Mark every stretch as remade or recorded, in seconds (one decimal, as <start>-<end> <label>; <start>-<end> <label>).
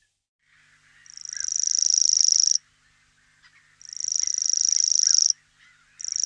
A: 0.0-6.3 recorded